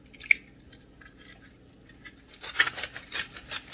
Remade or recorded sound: recorded